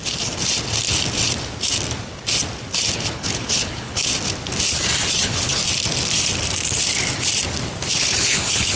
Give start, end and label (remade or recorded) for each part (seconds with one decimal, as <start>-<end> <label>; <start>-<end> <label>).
0.0-2.9 recorded; 2.9-4.0 remade; 4.0-5.1 recorded; 5.1-5.6 remade; 5.6-7.9 recorded; 7.9-8.8 remade